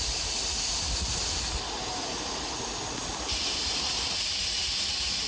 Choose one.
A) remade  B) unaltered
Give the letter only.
B